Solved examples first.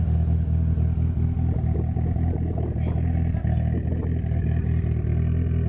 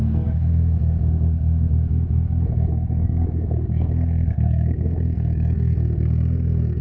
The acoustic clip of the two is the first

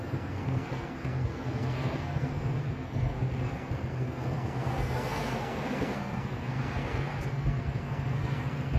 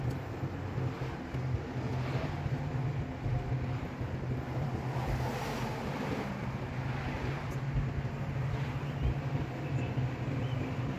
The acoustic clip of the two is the second